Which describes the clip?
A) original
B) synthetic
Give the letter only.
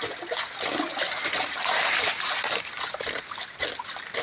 A